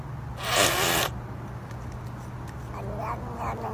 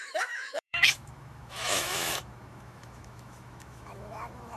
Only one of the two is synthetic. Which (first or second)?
second